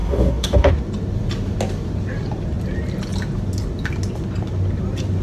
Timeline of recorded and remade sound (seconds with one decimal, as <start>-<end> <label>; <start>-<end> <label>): 0.0-0.7 remade; 0.7-5.2 recorded